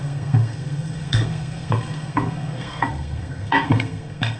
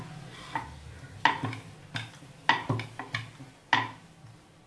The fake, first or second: first